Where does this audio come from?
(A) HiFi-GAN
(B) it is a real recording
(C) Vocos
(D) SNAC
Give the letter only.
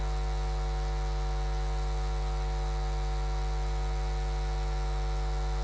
B